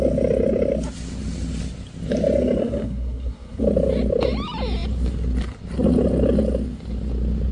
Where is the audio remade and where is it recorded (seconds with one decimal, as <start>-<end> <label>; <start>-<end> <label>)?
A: 0.0-2.6 recorded; 2.6-3.6 remade; 3.6-7.5 recorded